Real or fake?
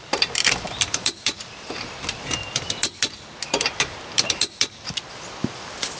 fake